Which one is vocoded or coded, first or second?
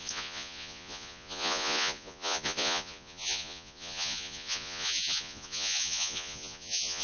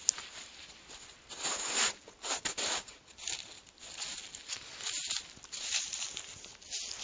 first